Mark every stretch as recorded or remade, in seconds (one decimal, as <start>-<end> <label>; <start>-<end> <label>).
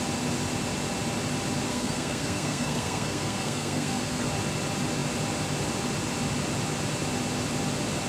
0.0-1.7 recorded; 1.7-4.3 remade; 4.3-8.1 recorded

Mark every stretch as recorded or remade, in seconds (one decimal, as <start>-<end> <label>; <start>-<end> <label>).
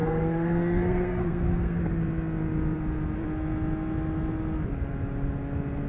0.0-1.8 remade; 1.8-5.9 recorded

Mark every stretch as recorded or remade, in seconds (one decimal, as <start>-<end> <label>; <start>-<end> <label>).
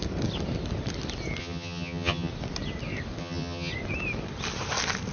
0.0-1.4 recorded; 1.4-2.3 remade; 2.3-3.2 recorded; 3.2-3.7 remade; 3.7-5.1 recorded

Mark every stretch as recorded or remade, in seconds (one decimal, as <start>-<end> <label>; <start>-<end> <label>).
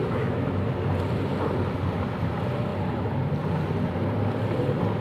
0.0-0.7 remade; 0.7-5.0 recorded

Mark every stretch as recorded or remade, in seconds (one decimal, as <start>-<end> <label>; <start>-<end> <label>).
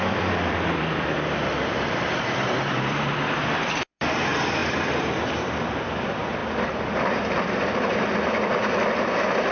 0.0-9.5 remade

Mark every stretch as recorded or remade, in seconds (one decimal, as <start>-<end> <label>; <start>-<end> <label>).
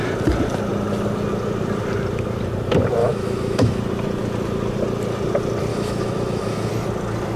0.0-3.0 recorded; 3.0-3.8 remade; 3.8-5.7 recorded; 5.7-6.7 remade; 6.7-7.4 recorded